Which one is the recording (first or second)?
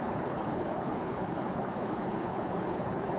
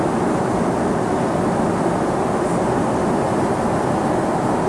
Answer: second